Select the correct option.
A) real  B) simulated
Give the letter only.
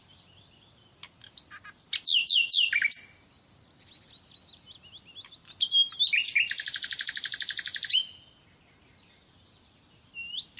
A